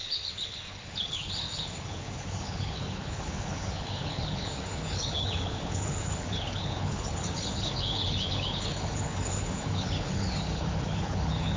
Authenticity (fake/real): fake